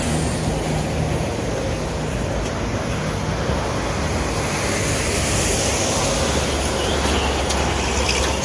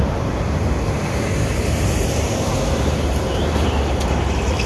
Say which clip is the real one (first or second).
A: first